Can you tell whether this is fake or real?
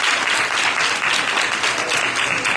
real